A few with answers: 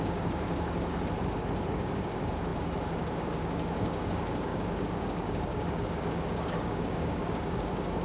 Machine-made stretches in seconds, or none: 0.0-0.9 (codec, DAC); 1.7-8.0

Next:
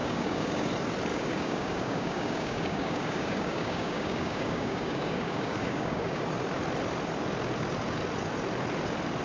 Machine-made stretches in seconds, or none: 0.0-0.7 (codec, DAC); 1.1-6.2

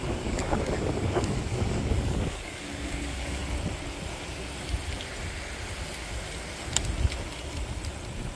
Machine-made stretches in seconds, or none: 0.0-3.4 (codec, DAC)

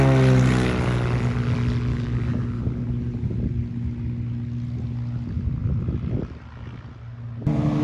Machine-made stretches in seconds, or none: 1.9-2.6 (codec, DAC)